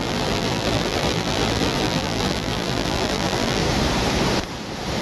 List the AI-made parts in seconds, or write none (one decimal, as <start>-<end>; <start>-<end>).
0.0-3.6